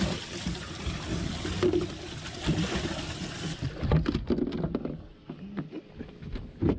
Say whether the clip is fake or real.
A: real